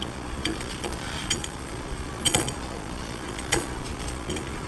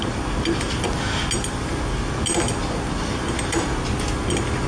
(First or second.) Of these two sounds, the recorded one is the second